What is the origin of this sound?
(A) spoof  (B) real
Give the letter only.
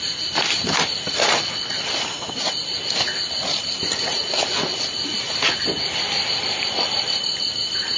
B